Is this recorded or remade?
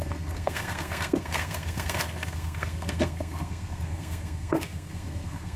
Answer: remade